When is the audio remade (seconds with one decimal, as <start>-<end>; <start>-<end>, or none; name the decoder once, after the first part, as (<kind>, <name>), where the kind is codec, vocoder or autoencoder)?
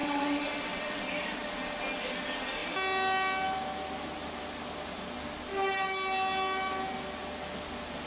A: 0.0-1.0 (vocoder, WaveNeXt)